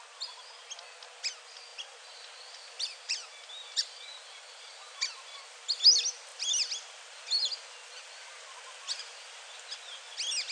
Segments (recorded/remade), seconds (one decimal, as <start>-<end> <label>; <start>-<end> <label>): 0.0-10.5 recorded